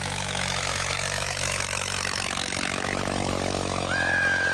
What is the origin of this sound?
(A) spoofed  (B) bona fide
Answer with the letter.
A